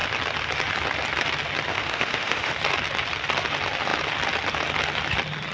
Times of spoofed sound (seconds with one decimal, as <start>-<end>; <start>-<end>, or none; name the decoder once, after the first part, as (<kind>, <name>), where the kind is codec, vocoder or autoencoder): 1.7-2.5 (autoencoder, DAC-VAE)

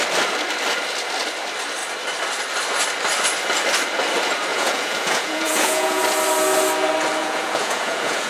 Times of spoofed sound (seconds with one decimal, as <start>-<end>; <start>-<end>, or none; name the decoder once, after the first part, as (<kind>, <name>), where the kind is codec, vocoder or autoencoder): 4.5-6.0 (vocoder, Vocos); 7.2-8.3